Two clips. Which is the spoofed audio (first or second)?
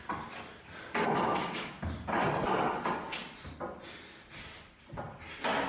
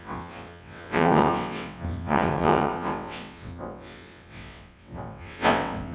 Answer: second